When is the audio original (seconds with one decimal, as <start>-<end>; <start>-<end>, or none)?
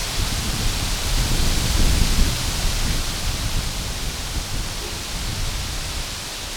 4.0-6.6